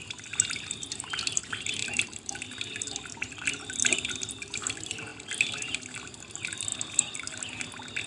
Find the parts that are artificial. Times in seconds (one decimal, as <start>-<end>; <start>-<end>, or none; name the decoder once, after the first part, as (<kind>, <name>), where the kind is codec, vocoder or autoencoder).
1.8-2.6 (vocoder, BigVGAN v2)